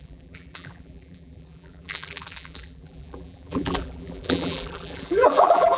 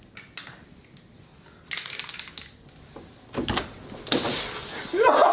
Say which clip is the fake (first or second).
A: first